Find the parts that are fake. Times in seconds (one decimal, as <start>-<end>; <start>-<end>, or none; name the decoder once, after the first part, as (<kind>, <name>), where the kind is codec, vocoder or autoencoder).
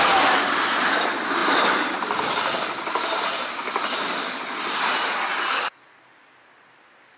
none